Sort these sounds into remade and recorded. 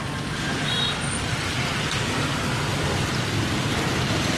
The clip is recorded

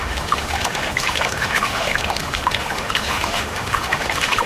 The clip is remade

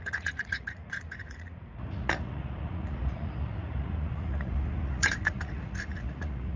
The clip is remade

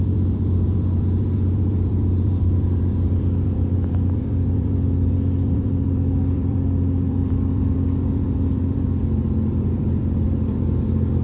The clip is remade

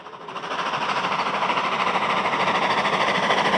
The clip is recorded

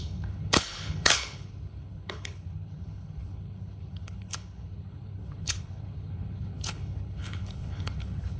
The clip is remade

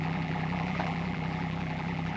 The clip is remade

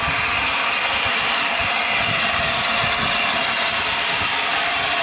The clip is recorded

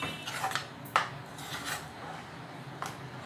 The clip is recorded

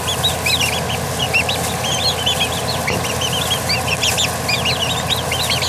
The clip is recorded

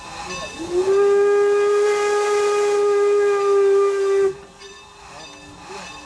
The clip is recorded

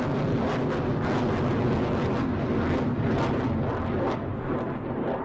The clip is recorded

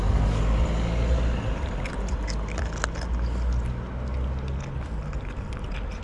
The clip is recorded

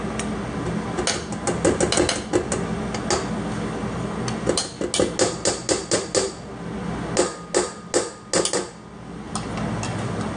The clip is recorded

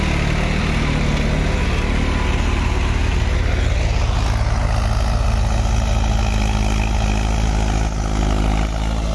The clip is recorded